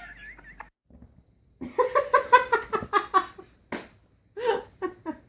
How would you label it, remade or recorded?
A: recorded